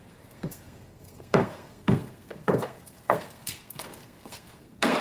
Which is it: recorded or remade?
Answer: remade